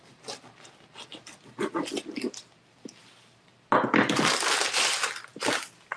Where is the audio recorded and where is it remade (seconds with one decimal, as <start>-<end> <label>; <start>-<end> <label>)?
0.0-6.0 recorded